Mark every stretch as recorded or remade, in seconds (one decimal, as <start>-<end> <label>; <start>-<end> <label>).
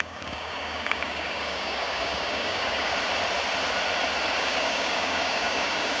0.0-2.9 remade; 2.9-4.4 recorded; 4.4-6.0 remade